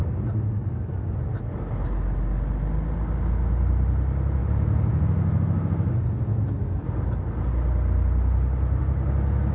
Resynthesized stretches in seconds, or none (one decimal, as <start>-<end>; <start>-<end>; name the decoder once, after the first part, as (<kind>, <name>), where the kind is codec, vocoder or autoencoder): none